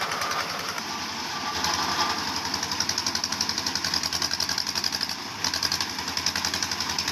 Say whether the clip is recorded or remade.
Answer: recorded